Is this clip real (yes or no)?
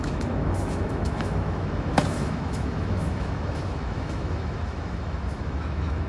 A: no